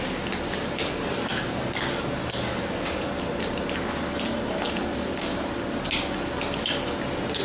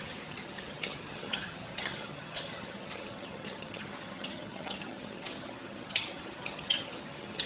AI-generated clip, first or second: second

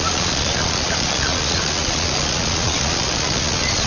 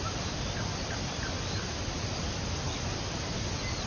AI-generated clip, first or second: first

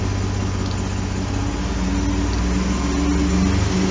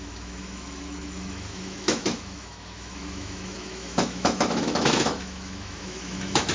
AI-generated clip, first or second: second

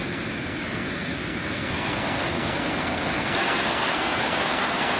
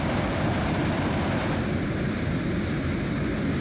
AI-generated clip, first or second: first